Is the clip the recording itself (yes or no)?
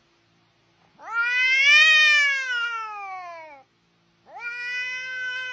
yes